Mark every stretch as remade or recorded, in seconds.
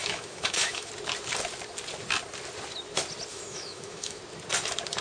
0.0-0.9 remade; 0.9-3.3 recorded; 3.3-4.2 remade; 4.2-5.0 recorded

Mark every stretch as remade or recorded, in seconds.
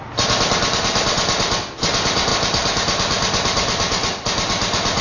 0.0-5.0 recorded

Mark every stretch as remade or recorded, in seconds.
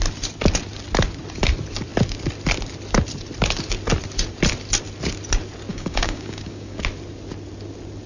0.0-5.7 recorded; 5.7-6.8 remade; 6.8-8.1 recorded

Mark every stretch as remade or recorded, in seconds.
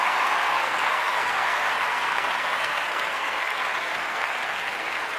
0.0-5.2 remade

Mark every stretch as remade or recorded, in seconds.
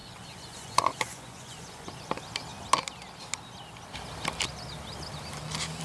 0.0-2.1 remade; 2.1-5.8 recorded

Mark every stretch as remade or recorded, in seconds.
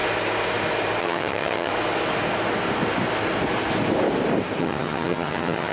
0.0-1.0 recorded; 1.0-1.7 remade; 1.7-4.6 recorded; 4.6-5.7 remade